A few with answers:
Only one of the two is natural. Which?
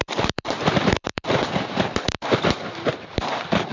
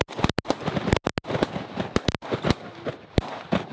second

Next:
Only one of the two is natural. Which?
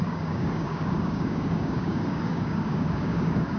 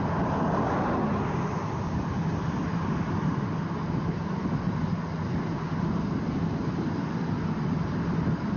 second